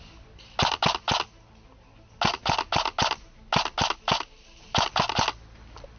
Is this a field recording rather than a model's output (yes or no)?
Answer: yes